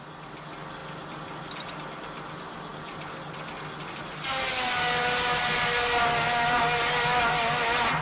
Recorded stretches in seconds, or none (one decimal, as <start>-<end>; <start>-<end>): 0.0-8.0